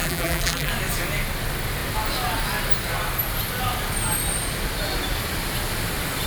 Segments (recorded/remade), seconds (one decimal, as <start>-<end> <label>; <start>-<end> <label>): 0.0-0.7 remade; 0.7-6.3 recorded